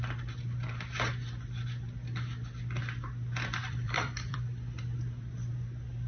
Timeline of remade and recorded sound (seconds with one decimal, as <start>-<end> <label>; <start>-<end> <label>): 0.0-3.6 recorded; 3.6-4.8 remade; 4.8-6.1 recorded